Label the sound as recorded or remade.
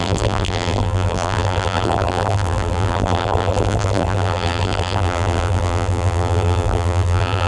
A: remade